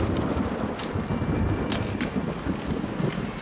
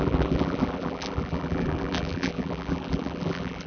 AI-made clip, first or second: second